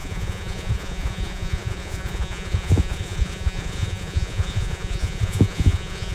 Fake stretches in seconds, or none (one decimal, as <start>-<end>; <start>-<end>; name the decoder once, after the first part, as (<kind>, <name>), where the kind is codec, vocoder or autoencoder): 0.0-6.1 (vocoder, Vocos)